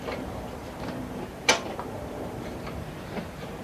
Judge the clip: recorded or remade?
remade